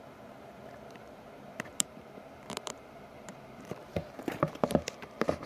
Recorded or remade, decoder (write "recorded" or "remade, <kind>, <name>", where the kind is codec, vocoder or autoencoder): remade, vocoder, BigVGAN v2